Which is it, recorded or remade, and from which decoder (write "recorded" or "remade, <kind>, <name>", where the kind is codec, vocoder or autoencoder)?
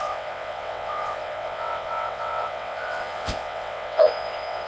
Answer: remade, vocoder, WaveNeXt